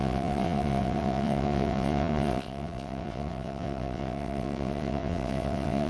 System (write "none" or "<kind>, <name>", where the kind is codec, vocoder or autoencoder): vocoder, WaveNeXt